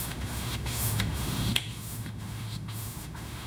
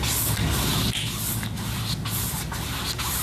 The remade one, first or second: first